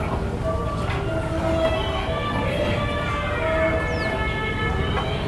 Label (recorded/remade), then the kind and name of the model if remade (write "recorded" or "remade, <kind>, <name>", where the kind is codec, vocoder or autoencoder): recorded